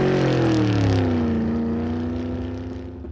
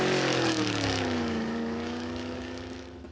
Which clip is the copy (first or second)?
second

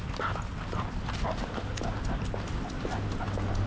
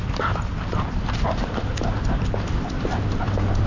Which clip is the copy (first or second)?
second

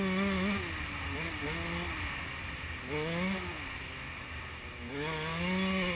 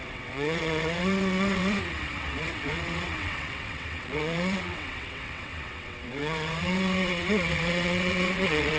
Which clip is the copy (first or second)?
second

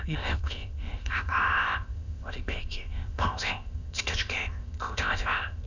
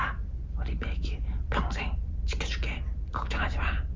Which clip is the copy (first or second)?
first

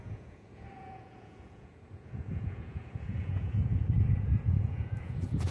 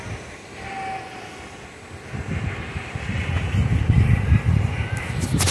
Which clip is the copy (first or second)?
first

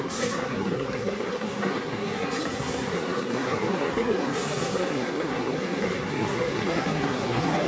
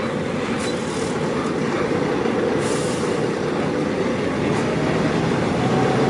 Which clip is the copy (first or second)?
first